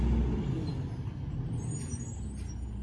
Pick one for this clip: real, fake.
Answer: real